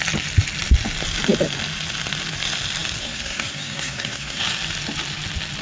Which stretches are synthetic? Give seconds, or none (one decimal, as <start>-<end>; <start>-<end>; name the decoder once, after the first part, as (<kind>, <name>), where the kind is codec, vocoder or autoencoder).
3.0-4.4 (codec, SNAC)